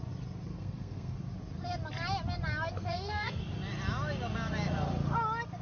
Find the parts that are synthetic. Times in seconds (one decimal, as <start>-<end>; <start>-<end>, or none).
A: 0.5-1.2; 2.8-3.4